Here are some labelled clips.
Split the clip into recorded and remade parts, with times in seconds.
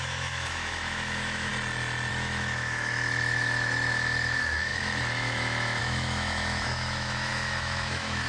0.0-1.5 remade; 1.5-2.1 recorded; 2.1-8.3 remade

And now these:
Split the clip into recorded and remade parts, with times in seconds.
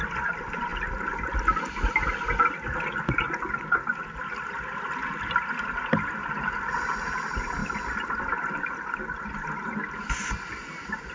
0.0-7.6 recorded; 7.6-8.7 remade; 8.7-11.1 recorded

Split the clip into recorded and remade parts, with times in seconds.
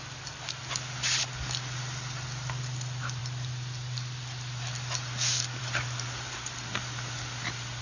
0.0-7.8 recorded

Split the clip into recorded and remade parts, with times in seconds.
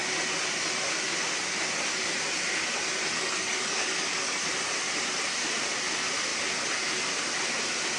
0.0-3.1 recorded; 3.1-4.4 remade; 4.4-8.0 recorded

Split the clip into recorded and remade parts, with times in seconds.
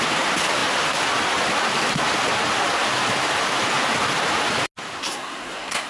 0.0-5.0 recorded; 5.0-5.9 remade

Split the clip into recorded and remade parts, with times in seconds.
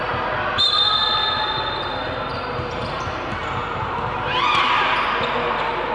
0.0-1.2 remade; 1.2-2.9 recorded; 2.9-5.9 remade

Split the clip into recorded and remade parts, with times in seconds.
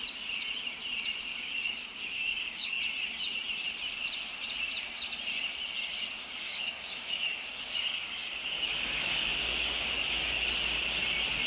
0.0-1.3 recorded; 1.3-2.8 remade; 2.8-6.2 recorded; 6.2-10.2 remade; 10.2-11.5 recorded